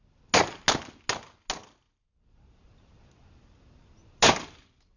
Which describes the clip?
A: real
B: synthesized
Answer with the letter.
A